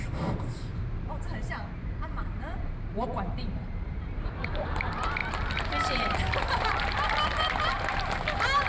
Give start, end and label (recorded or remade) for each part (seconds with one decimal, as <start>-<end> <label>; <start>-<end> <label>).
0.0-0.7 remade; 0.7-1.4 recorded; 1.4-5.2 remade; 5.2-8.7 recorded